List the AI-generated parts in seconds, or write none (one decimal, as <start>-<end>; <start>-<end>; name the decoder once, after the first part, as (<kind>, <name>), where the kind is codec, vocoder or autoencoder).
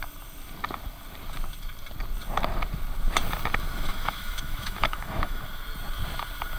3.9-5.4 (autoencoder, DAC-VAE)